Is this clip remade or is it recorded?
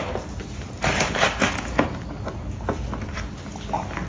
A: recorded